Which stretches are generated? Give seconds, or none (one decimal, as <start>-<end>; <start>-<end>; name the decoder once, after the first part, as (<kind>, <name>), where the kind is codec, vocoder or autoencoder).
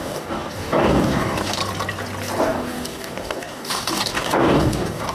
0.0-1.6 (codec, DAC); 2.4-5.1